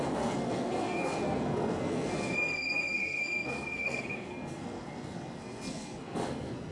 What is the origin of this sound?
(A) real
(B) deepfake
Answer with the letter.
B